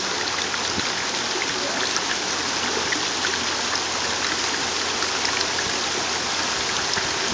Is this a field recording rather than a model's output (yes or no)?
yes